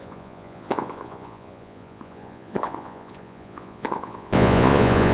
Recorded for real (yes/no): no